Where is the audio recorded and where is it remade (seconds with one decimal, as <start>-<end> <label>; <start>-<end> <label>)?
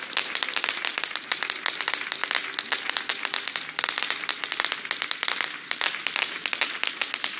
0.0-7.4 recorded